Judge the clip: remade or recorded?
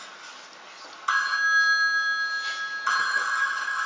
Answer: recorded